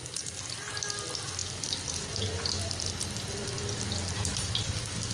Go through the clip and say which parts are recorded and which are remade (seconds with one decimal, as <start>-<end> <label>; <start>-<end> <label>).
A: 0.0-5.1 recorded